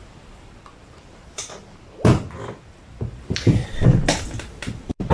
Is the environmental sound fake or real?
fake